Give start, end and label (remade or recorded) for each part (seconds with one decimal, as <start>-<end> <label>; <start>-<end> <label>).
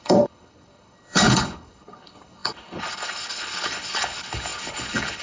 0.0-5.2 remade